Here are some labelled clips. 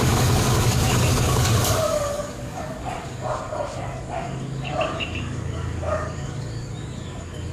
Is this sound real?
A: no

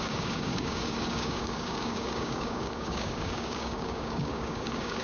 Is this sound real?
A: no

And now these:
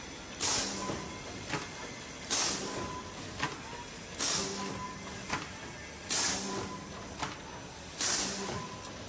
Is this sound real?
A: yes